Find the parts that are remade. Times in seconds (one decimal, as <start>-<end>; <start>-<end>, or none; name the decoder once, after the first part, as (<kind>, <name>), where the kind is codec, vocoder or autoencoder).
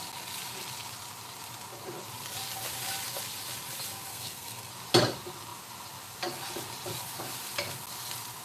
4.1-4.7 (codec, SNAC)